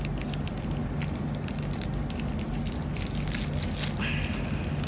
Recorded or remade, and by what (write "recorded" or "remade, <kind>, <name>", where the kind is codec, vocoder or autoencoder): recorded